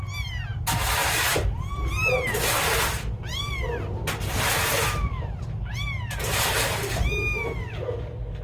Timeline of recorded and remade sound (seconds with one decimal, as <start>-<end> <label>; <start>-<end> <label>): 0.0-1.0 recorded; 1.0-3.5 remade; 3.5-8.4 recorded